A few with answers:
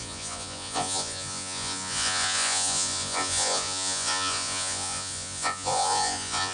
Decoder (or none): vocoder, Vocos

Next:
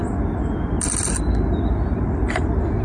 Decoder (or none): none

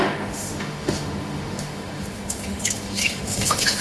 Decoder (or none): autoencoder, DAC-VAE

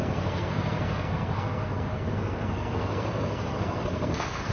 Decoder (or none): codec, SNAC